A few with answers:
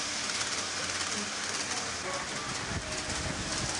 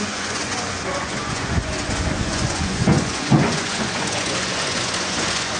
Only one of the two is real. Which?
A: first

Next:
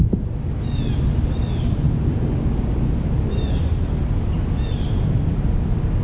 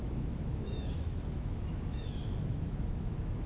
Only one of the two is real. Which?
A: first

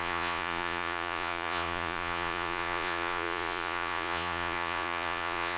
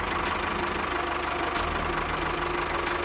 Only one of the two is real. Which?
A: second